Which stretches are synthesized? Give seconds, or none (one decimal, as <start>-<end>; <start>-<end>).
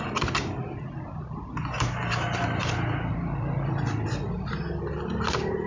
2.0-3.1